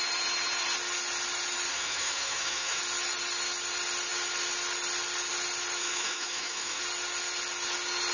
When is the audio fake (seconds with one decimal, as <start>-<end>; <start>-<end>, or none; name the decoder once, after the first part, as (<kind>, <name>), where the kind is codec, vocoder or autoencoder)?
1.7-2.8 (autoencoder, DAC-VAE); 5.8-6.8

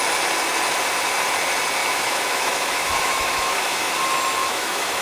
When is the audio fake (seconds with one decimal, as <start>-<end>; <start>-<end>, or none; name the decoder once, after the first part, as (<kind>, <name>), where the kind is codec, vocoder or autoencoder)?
1.8-3.9 (autoencoder, DAC-VAE); 4.4-5.0